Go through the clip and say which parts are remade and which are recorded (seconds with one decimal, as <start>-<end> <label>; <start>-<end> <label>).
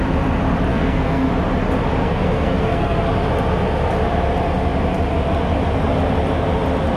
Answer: 0.0-0.7 recorded; 0.7-1.3 remade; 1.3-2.0 recorded; 2.0-3.0 remade; 3.0-7.0 recorded